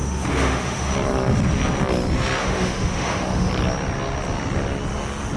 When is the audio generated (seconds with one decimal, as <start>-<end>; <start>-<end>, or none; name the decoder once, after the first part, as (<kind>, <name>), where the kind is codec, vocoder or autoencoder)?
0.0-0.9 (autoencoder, DAC-VAE); 2.4-3.5